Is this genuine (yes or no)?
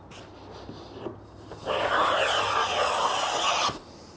yes